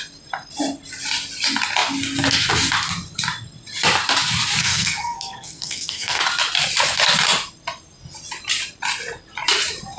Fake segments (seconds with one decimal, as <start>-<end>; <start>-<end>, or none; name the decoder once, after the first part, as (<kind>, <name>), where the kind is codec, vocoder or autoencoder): 4.6-6.2 (codec, SNAC)